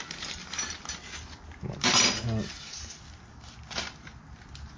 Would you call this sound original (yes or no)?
yes